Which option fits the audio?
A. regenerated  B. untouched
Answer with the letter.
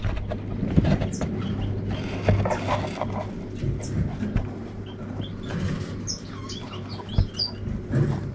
B